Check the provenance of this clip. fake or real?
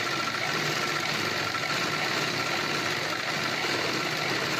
real